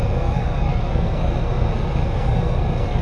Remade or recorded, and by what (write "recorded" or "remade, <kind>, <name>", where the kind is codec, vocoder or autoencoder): remade, codec, SNAC